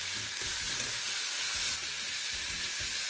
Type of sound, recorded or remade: recorded